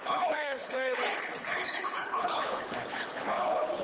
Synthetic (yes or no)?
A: yes